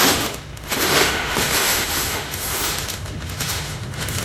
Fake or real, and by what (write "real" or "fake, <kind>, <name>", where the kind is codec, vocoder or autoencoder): fake, autoencoder, DAC-VAE